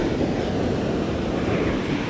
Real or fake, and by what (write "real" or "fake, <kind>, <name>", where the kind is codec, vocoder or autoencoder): fake, vocoder, BigVGAN v2